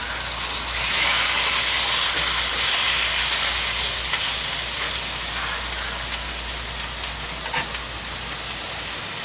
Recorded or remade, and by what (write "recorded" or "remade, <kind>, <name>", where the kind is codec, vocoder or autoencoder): recorded